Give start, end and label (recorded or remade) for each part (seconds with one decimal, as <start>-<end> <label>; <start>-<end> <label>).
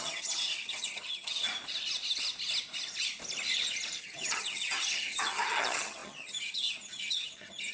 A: 0.0-1.5 remade; 1.5-4.0 recorded; 4.0-7.7 remade